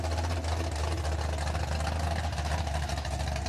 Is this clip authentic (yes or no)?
yes